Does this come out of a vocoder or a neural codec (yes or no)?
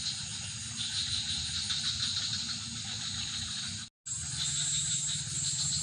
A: no